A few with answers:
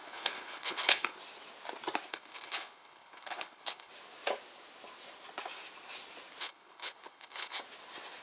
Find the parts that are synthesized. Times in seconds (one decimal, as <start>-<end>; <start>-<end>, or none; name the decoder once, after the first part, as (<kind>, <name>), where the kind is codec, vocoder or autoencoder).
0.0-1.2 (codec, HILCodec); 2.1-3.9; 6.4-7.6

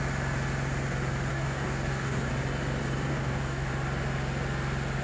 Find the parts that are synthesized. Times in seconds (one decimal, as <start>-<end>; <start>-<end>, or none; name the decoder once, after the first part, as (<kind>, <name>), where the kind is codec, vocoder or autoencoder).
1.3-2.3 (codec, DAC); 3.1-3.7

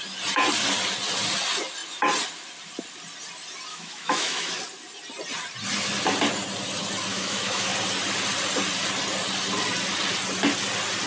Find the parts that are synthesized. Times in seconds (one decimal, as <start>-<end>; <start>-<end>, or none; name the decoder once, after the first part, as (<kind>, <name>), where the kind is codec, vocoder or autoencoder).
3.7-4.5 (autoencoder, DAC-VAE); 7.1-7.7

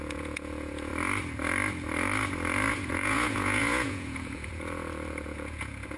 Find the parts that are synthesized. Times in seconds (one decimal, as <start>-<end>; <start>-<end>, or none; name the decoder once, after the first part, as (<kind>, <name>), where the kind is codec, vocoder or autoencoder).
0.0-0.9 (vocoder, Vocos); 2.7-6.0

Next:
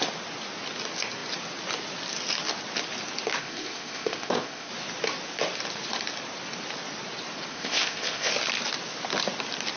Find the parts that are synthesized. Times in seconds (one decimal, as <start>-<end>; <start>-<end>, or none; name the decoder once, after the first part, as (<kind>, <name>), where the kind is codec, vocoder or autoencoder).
3.4-4.7 (codec, ZipCodec); 7.5-8.3

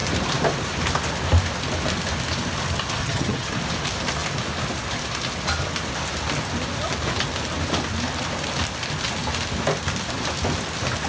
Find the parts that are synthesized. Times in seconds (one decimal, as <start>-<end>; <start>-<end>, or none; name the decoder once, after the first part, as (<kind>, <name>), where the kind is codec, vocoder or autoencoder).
3.0-3.5 (vocoder, HiFi-GAN)

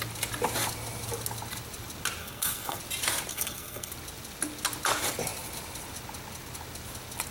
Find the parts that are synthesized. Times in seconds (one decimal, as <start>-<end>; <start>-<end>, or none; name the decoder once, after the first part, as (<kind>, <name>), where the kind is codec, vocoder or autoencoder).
2.2-2.8 (codec, SNAC); 3.3-3.9